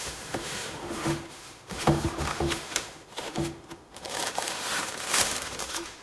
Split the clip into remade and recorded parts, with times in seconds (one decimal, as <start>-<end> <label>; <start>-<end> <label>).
0.0-6.0 remade